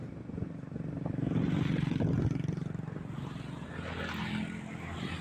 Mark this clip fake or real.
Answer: real